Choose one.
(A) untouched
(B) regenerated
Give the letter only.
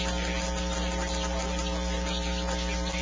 A